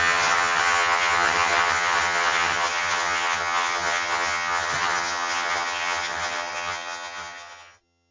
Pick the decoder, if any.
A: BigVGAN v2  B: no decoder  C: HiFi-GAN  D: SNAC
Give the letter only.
C